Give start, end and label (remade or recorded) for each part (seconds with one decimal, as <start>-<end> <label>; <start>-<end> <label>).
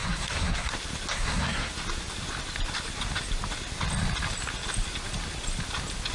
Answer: 0.0-0.7 remade; 0.7-1.1 recorded; 1.1-1.7 remade; 1.7-6.1 recorded